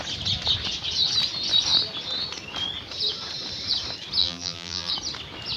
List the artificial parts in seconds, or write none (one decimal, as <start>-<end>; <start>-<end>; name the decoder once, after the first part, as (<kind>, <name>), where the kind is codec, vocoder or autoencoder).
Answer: 4.2-4.9 (vocoder, BigVGAN v2)